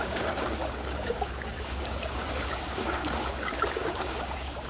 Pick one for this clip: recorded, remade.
remade